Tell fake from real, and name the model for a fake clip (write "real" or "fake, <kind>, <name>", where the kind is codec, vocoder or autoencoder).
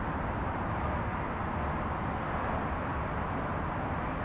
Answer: real